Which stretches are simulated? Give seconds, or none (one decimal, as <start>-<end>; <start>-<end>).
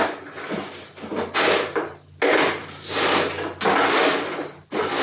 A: none